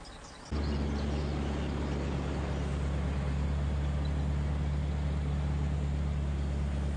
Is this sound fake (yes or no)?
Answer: no